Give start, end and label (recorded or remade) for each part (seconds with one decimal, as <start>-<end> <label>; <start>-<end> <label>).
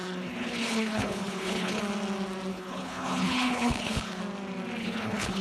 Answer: 0.0-1.8 remade; 1.8-2.5 recorded; 2.5-4.2 remade; 4.2-4.8 recorded; 4.8-5.4 remade